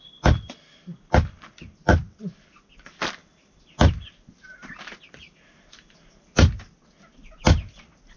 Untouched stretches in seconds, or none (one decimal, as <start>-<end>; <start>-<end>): 0.0-8.2